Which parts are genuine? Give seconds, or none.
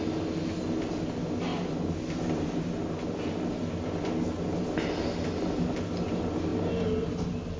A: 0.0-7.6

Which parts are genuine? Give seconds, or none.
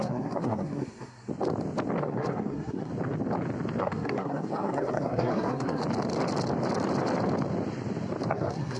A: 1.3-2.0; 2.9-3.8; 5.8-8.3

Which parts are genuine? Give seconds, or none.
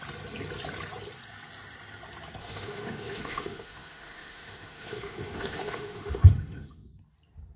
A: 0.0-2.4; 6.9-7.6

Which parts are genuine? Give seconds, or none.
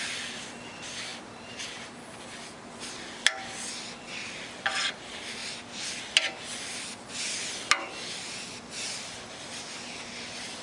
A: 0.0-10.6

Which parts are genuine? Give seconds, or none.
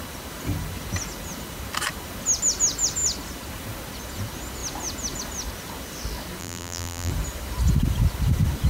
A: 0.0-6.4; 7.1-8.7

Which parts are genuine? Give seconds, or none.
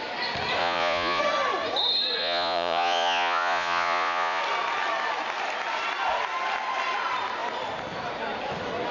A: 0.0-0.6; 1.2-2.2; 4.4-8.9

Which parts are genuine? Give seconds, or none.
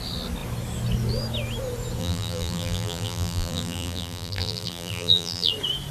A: 0.0-2.0; 5.5-5.9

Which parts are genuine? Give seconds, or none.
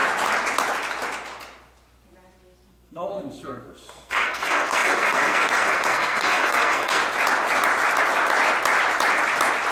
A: 0.0-2.7; 7.0-9.7